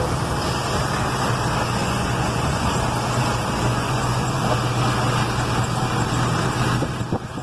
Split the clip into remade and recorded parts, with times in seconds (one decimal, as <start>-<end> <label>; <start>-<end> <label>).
0.0-1.8 recorded; 1.8-2.7 remade; 2.7-3.7 recorded; 3.7-4.4 remade; 4.4-7.4 recorded